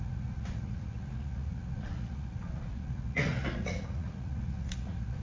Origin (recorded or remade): remade